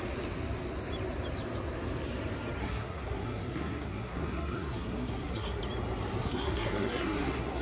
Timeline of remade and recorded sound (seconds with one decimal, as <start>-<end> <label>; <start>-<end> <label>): 0.0-2.6 recorded; 2.6-5.6 remade; 5.6-6.2 recorded; 6.2-7.6 remade